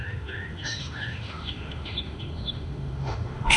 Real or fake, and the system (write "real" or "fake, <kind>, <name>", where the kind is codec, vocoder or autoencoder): fake, autoencoder, DAC-VAE